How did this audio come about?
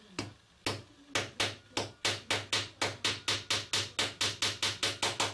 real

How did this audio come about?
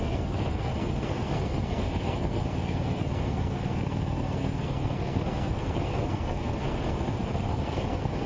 fake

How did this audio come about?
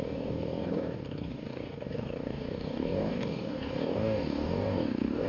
fake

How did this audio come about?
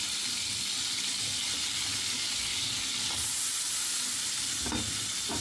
real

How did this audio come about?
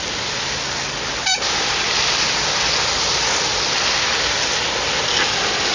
real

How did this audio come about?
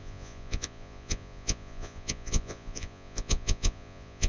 fake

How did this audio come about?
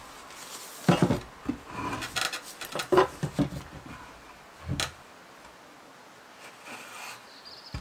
real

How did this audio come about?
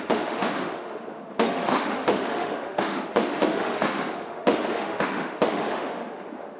fake